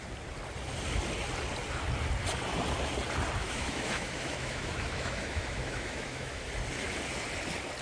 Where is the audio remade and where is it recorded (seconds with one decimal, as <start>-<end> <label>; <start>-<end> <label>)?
0.0-3.4 recorded; 3.4-6.5 remade; 6.5-7.8 recorded

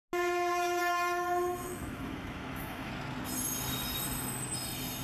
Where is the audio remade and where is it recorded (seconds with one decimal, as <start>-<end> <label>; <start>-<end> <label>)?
0.0-0.8 recorded; 0.8-2.9 remade; 2.9-5.0 recorded

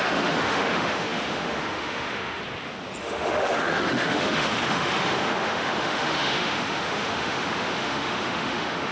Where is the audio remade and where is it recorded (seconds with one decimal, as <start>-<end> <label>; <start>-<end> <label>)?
0.0-2.4 remade; 2.4-3.0 recorded; 3.0-8.9 remade

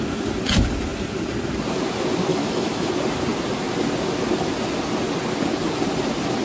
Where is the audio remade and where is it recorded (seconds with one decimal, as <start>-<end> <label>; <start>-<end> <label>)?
0.0-2.3 recorded; 2.3-2.9 remade; 2.9-6.4 recorded